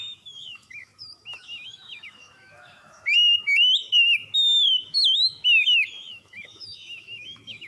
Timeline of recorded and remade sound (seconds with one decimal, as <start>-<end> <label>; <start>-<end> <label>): 0.0-7.7 remade